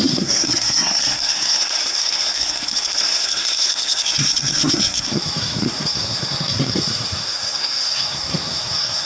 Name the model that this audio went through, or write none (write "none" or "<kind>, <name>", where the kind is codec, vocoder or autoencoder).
codec, SNAC